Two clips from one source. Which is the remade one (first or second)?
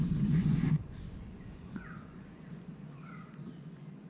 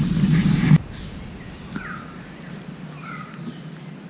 first